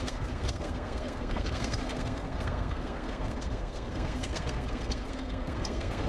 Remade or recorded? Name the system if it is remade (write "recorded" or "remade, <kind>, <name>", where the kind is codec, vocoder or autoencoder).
remade, codec, SNAC